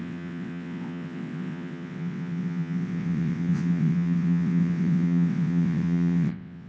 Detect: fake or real fake